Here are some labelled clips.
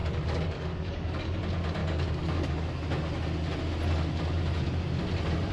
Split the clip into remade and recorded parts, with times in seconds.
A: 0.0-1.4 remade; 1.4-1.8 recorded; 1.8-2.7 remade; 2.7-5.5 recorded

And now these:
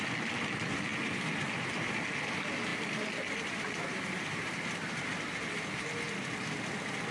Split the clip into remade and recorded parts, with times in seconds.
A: 0.0-7.1 recorded

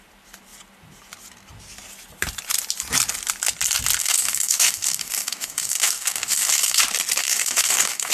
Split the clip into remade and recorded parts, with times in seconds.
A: 0.0-4.0 recorded; 4.0-6.8 remade; 6.8-7.2 recorded; 7.2-8.1 remade

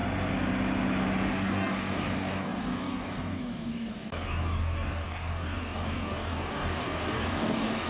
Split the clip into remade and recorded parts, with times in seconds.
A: 0.0-1.3 recorded; 1.3-7.9 remade

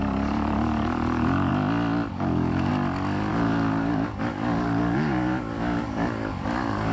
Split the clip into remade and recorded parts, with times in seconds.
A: 0.0-1.5 remade; 1.5-2.1 recorded; 2.1-2.7 remade; 2.7-3.3 recorded; 3.3-6.9 remade

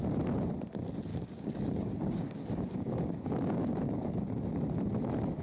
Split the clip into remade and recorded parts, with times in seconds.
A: 0.0-1.1 recorded; 1.1-4.3 remade; 4.3-5.4 recorded